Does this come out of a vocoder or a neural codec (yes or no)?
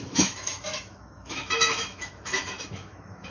yes